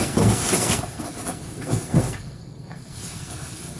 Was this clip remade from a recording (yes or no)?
yes